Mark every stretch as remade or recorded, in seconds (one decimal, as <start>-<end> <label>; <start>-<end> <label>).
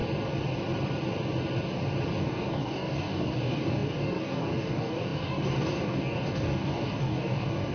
0.0-2.2 recorded; 2.2-7.7 remade